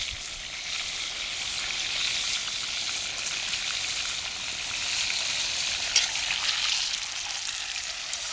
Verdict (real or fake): real